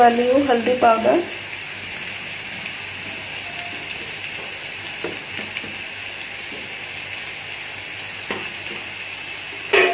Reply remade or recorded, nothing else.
recorded